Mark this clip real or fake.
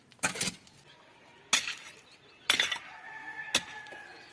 real